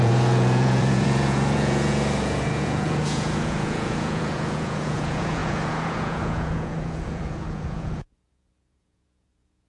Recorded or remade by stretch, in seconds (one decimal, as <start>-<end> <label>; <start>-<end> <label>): 0.0-9.7 remade